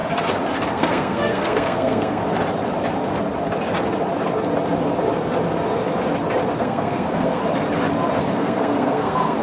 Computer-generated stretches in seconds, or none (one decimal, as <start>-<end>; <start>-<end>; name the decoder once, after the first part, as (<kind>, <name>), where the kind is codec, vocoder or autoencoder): 0.7-2.2 (codec, SNAC); 6.6-7.4; 8.2-9.4